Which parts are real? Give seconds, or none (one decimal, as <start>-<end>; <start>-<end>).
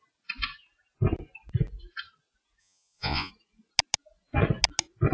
0.0-2.6; 3.3-5.1